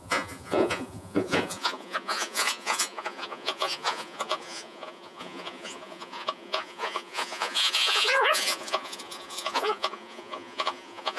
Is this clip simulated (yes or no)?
yes